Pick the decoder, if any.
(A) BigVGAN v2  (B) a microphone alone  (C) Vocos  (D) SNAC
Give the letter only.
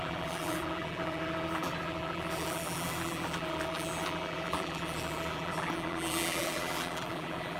A